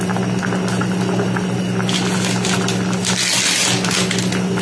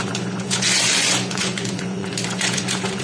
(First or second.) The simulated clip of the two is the second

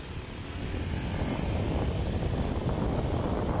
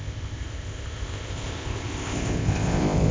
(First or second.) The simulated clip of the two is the second